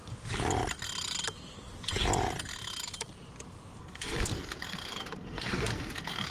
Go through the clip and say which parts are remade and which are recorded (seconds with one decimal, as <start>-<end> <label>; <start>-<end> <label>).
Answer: 0.0-3.8 recorded; 3.8-6.3 remade